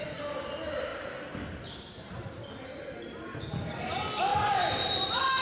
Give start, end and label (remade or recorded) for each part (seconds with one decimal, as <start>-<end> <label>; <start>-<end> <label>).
0.0-4.3 recorded; 4.3-5.4 remade

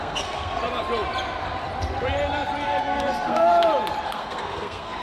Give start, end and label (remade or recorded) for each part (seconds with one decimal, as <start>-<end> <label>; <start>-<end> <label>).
0.0-0.6 remade; 0.6-2.8 recorded; 2.8-3.5 remade; 3.5-4.0 recorded; 4.0-5.0 remade

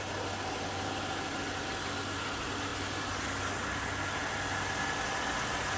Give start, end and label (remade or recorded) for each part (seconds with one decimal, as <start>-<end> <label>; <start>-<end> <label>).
0.0-5.8 recorded

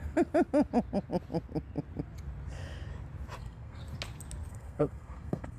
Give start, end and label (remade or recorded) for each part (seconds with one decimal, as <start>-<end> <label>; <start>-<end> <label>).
0.0-3.4 recorded; 3.4-3.8 remade; 3.8-4.5 recorded; 4.5-5.6 remade

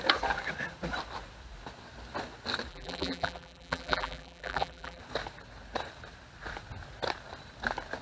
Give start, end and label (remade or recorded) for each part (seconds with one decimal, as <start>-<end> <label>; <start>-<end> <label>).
0.0-2.7 recorded; 2.7-5.0 remade; 5.0-8.0 recorded

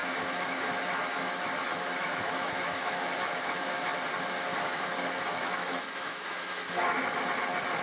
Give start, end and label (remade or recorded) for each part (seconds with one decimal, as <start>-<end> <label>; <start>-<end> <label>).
0.0-4.0 remade; 4.0-4.5 recorded; 4.5-7.3 remade; 7.3-7.8 recorded